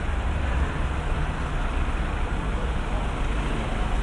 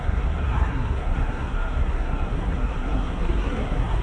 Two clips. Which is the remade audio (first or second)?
second